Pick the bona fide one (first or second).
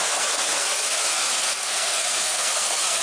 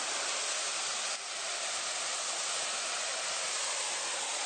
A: second